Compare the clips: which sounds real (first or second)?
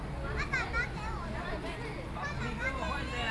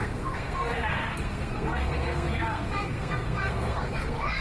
first